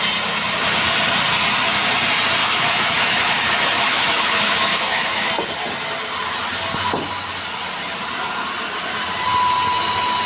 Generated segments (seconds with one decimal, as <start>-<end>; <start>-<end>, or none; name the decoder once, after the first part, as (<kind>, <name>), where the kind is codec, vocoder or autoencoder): 2.4-5.3 (autoencoder, DAC-VAE)